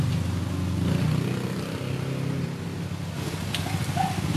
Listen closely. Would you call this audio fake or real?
real